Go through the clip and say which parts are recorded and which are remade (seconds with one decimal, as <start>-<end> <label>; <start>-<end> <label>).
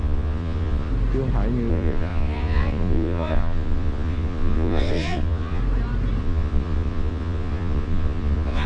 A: 0.0-0.9 remade; 0.9-1.7 recorded; 1.7-5.6 remade; 5.6-6.2 recorded; 6.2-8.7 remade